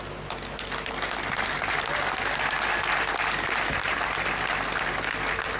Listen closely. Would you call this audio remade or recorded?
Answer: recorded